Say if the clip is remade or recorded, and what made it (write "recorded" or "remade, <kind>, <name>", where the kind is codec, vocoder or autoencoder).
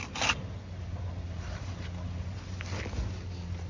recorded